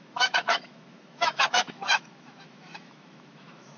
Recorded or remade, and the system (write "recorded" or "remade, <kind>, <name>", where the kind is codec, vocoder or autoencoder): remade, autoencoder, DAC-VAE